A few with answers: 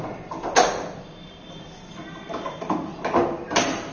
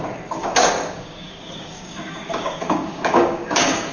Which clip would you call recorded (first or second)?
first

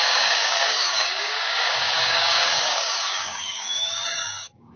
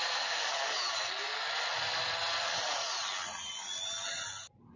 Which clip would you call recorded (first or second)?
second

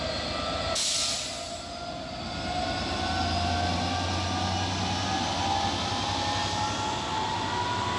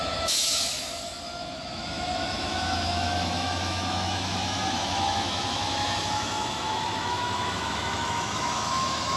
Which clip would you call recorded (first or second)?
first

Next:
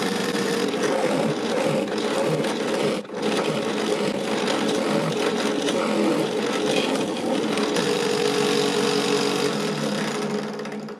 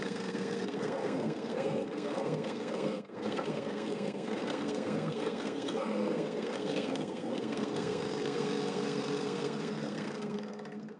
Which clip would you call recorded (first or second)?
first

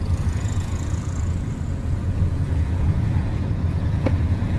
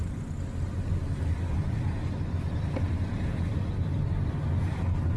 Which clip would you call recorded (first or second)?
second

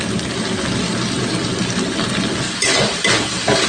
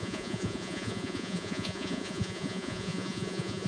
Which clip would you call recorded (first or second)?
first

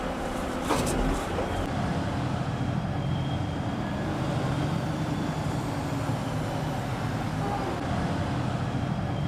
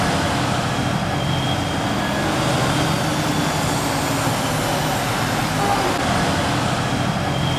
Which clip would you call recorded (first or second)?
second